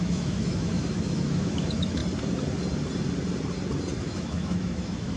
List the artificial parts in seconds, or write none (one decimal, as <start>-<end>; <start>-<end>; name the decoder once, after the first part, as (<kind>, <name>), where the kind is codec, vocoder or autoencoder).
0.0-2.0 (autoencoder, DAC-VAE); 4.0-5.2